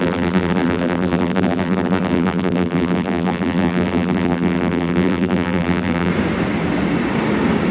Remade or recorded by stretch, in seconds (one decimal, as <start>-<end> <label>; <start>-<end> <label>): 0.0-6.1 remade; 6.1-7.7 recorded

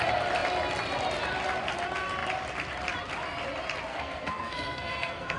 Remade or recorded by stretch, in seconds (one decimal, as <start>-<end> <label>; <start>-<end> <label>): 0.0-3.9 recorded; 3.9-5.4 remade

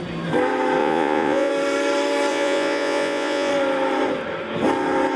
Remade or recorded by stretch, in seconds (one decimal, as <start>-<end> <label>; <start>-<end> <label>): 0.0-0.8 recorded; 0.8-1.5 remade; 1.5-2.3 recorded; 2.3-3.5 remade; 3.5-5.2 recorded

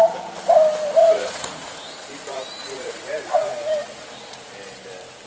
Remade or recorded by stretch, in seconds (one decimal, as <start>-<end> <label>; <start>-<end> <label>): 0.0-1.0 recorded; 1.0-3.5 remade; 3.5-5.3 recorded

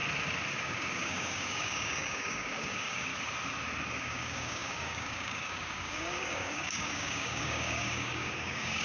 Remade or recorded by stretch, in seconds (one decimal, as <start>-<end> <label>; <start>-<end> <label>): 0.0-0.6 recorded; 0.6-3.1 remade; 3.1-3.9 recorded; 3.9-8.8 remade

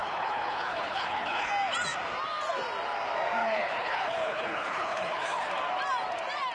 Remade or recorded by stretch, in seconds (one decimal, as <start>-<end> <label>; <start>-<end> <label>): 0.0-1.5 remade; 1.5-3.4 recorded; 3.4-5.5 remade; 5.5-6.5 recorded

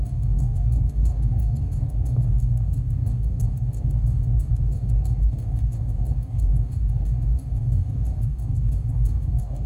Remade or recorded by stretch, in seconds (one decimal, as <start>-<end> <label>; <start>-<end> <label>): 0.0-9.7 remade